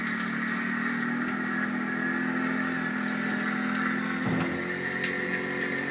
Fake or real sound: real